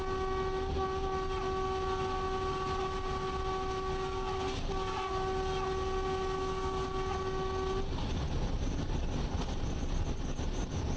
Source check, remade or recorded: recorded